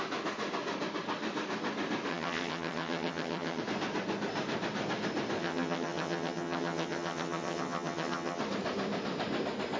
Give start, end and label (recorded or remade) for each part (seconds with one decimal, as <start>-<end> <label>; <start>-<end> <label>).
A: 0.0-2.1 recorded; 2.1-3.6 remade; 3.6-5.4 recorded; 5.4-8.4 remade; 8.4-9.8 recorded